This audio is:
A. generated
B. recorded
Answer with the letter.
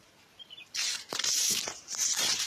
A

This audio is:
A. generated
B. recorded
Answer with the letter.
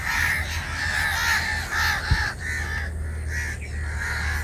B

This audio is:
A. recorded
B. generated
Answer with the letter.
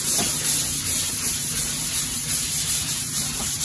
B